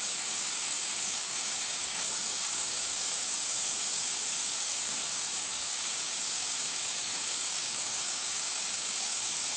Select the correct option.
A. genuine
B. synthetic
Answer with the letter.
B